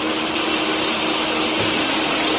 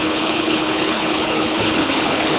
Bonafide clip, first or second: first